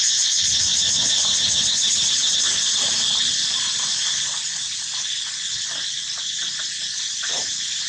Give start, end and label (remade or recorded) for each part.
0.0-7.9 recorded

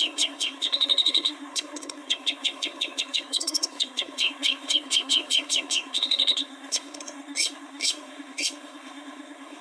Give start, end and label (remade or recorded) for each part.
0.0-9.6 remade

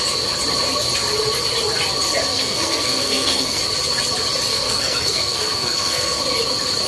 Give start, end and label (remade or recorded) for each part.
0.0-2.3 recorded; 2.3-3.6 remade; 3.6-4.5 recorded; 4.5-6.2 remade; 6.2-6.9 recorded